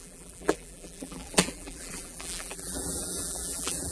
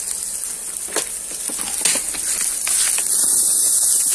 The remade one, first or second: first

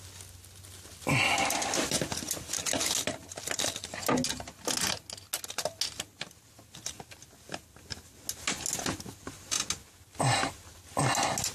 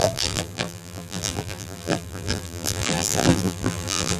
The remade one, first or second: second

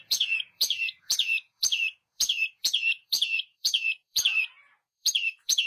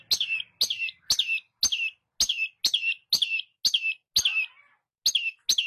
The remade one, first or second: first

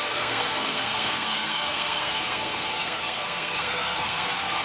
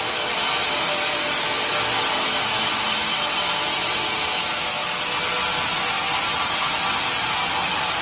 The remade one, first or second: first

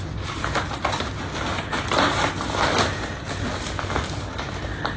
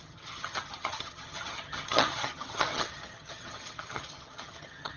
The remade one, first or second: second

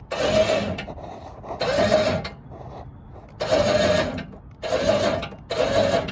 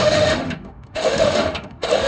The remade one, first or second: second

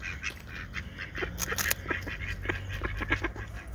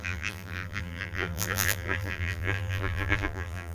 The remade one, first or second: second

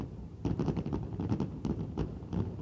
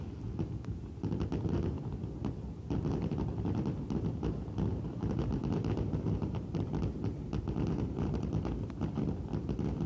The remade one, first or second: first